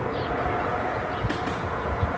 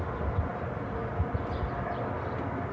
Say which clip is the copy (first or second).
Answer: first